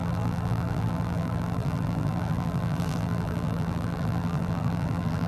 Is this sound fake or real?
fake